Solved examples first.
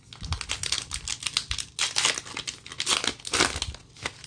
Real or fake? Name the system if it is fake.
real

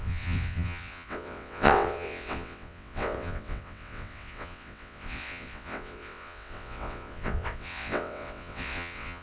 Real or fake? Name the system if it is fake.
fake, vocoder, WaveNeXt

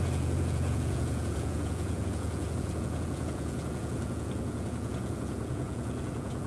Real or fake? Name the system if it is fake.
fake, vocoder, Vocos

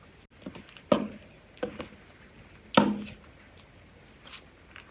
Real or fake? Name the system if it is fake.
real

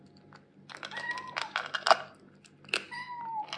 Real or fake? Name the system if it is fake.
real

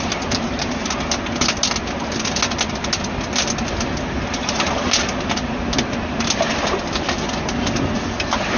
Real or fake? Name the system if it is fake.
real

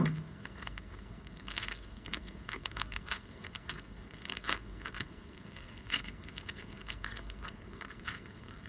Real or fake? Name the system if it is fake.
fake, codec, SNAC